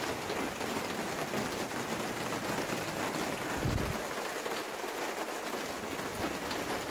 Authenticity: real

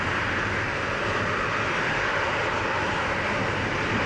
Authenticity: real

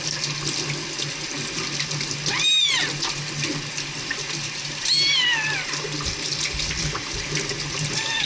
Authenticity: real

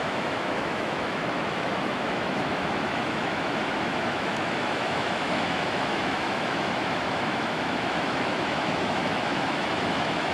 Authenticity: fake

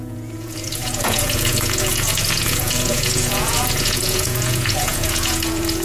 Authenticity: fake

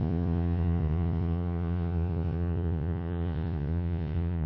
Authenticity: fake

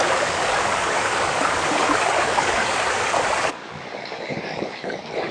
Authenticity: fake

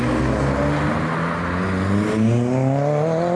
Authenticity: real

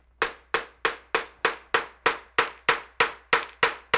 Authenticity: real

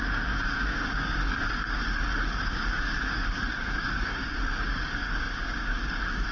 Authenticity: fake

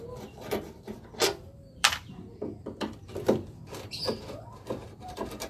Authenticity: fake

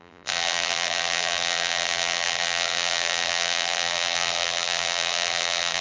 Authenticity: fake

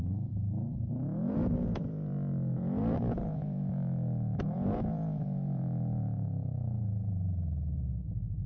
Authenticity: fake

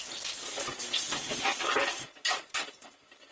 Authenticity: real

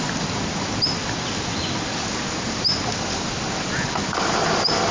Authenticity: real